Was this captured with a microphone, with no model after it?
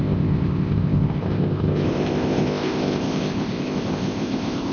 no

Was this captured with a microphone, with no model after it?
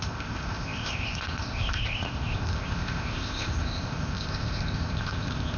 no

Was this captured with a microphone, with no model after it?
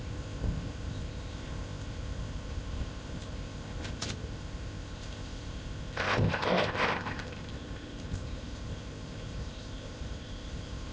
no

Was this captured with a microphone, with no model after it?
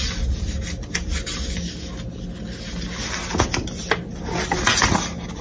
yes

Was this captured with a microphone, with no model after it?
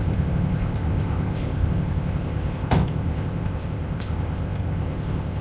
no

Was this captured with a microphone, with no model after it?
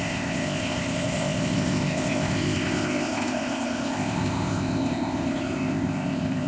no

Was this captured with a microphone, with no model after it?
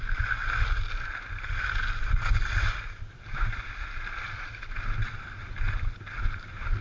yes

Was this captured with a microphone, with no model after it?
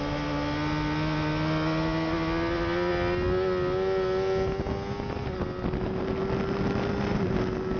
yes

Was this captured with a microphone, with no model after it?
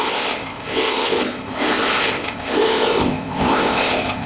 no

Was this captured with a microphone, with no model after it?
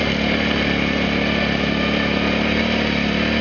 yes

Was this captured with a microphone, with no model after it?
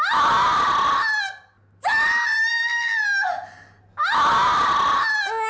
yes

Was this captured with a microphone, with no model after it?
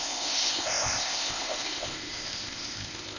no